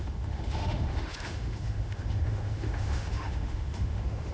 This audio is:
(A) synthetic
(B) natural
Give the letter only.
A